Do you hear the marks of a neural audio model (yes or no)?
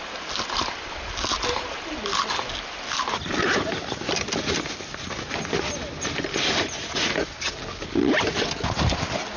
no